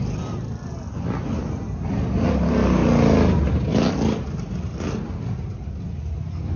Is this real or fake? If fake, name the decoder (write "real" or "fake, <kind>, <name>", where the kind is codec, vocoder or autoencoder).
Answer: real